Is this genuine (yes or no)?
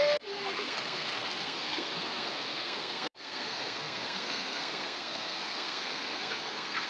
no